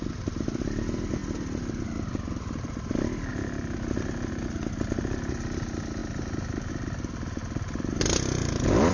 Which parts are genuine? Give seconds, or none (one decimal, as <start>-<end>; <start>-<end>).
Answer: 0.0-8.9